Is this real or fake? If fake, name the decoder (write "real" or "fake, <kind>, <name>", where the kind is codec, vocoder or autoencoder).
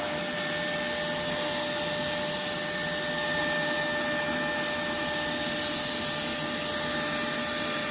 real